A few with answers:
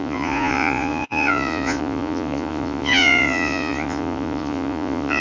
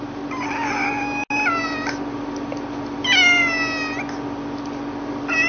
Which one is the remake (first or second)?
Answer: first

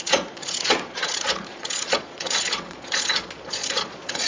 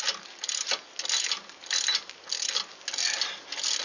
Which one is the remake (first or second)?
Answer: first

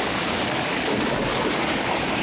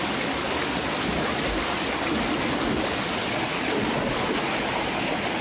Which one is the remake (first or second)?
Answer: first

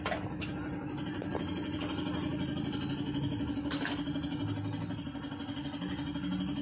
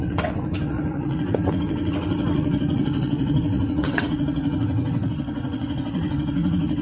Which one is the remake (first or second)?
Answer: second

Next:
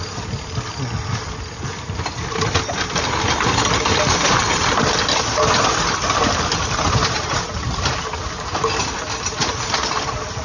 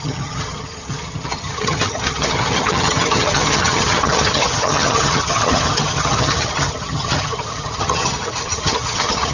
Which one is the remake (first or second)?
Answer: second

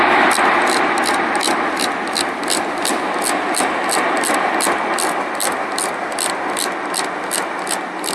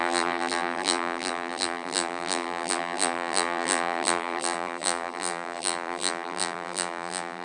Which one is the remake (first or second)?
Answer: second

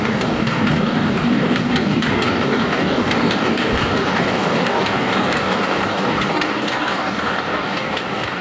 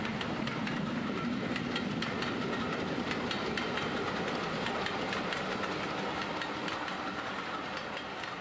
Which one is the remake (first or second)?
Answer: first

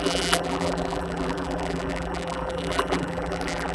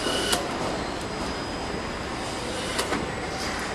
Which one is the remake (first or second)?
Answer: first